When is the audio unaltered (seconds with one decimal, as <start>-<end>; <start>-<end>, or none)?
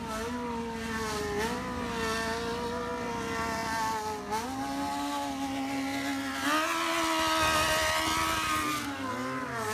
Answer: 0.0-9.7